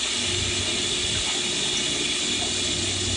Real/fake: real